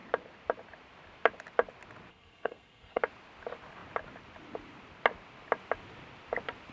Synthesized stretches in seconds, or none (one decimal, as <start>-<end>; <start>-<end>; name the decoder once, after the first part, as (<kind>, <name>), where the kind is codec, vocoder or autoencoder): 2.1-3.0 (codec, SNAC)